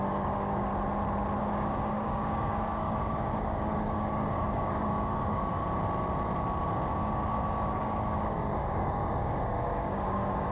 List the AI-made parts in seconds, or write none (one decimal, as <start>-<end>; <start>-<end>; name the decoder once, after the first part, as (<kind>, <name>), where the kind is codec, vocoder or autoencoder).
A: 0.0-0.7 (codec, DAC); 1.4-5.6; 6.9-10.5